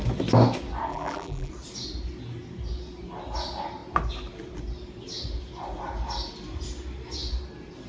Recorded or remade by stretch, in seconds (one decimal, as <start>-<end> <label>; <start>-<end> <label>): 0.0-0.9 recorded; 0.9-1.5 remade; 1.5-7.9 recorded